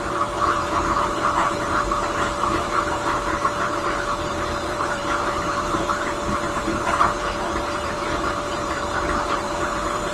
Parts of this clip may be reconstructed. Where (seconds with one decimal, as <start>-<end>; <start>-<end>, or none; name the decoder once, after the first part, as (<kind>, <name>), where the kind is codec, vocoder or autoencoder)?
0.0-10.1 (vocoder, BigVGAN v2)